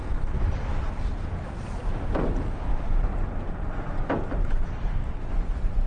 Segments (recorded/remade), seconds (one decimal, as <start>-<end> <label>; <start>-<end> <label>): 0.0-2.7 recorded; 2.7-3.2 remade; 3.2-4.4 recorded; 4.4-5.9 remade